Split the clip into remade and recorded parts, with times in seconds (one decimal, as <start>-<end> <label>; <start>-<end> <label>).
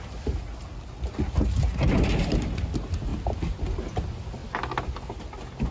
0.0-5.7 recorded